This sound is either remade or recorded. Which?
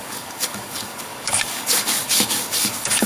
remade